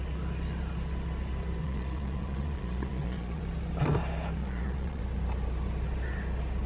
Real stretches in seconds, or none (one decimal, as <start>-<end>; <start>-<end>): 0.0-1.6; 3.4-4.4; 5.0-6.7